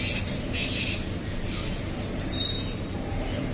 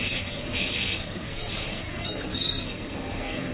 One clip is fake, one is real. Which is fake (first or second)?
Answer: second